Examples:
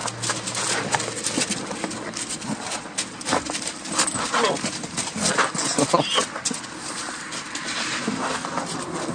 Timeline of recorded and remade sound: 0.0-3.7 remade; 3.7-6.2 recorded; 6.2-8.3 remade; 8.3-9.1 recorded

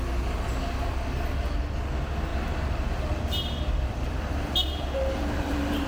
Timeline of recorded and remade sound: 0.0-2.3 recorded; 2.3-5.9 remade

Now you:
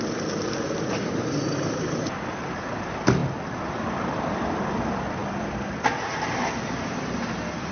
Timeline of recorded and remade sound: 0.0-3.2 recorded; 3.2-4.1 remade; 4.1-5.2 recorded; 5.2-6.6 remade; 6.6-7.7 recorded